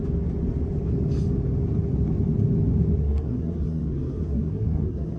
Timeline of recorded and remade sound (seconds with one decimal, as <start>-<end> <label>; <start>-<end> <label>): 0.0-3.0 recorded; 3.0-5.2 remade